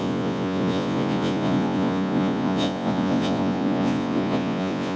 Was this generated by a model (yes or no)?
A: yes